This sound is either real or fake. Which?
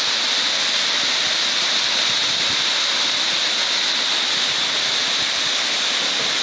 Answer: real